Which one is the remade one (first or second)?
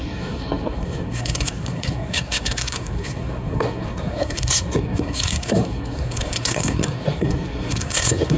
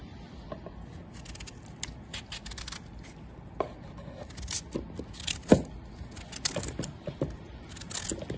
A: first